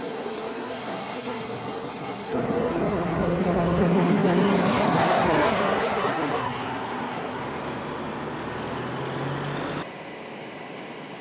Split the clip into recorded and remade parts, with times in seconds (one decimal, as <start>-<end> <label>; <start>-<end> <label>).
0.0-7.4 remade; 7.4-11.2 recorded